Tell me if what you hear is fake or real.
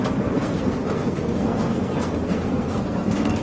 fake